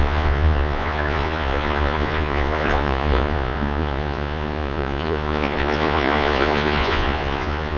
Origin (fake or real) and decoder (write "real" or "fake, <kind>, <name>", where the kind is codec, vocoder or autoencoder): fake, vocoder, Vocos